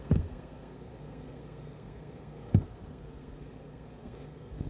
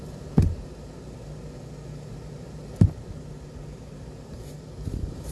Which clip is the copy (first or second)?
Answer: first